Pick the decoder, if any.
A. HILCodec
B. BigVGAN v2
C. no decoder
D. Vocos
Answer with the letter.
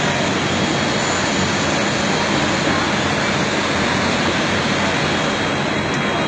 C